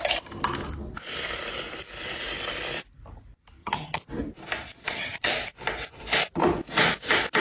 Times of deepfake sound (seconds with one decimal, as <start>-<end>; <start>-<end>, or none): 3.6-4.1; 4.8-5.3